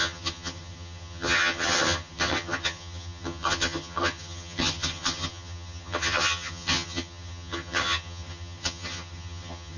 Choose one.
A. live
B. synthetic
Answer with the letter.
B